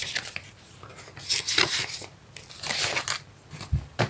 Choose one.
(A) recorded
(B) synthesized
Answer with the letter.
A